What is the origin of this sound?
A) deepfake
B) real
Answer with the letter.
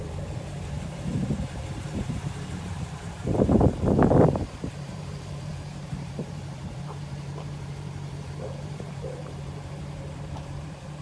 A